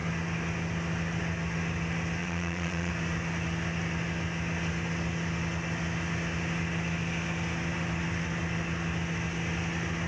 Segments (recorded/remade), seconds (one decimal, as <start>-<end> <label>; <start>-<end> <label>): 0.0-2.2 recorded; 2.2-2.9 remade; 2.9-10.1 recorded